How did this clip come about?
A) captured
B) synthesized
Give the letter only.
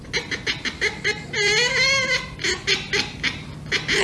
A